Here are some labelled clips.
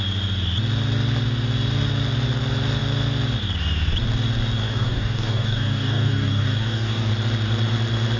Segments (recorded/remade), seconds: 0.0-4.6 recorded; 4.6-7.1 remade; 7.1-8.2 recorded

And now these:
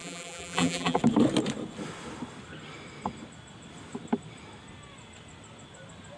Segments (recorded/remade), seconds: 0.0-1.0 remade; 1.0-6.2 recorded

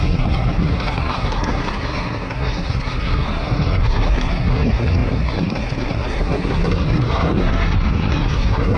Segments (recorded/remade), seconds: 0.0-8.8 remade

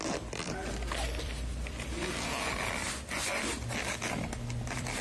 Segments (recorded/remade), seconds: 0.0-0.6 remade; 0.6-1.2 recorded; 1.2-2.8 remade; 2.8-4.6 recorded; 4.6-5.0 remade

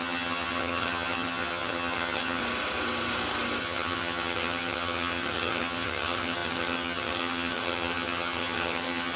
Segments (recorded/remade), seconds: 0.0-2.4 remade; 2.4-3.6 recorded; 3.6-9.2 remade

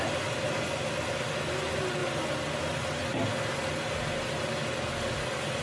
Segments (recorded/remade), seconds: 0.0-5.6 recorded

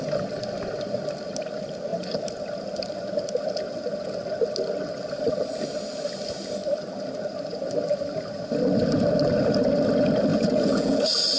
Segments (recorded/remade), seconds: 0.0-10.3 recorded; 10.3-11.0 remade; 11.0-11.4 recorded